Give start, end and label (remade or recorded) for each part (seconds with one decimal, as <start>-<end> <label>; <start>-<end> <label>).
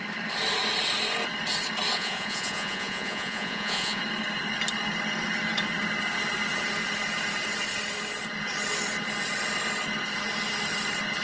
0.0-1.9 recorded; 1.9-4.0 remade; 4.0-11.2 recorded